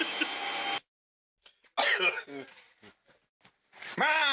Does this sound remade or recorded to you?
recorded